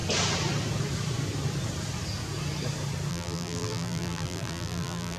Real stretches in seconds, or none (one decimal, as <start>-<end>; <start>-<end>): 0.0-3.1